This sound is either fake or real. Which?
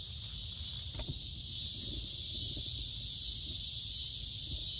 real